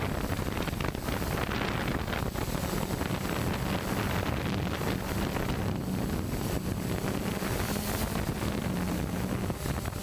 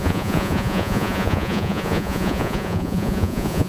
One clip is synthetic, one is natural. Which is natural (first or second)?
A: first